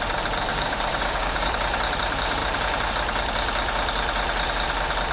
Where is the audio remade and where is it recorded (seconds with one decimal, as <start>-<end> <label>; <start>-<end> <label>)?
0.0-0.5 recorded; 0.5-1.5 remade; 1.5-5.1 recorded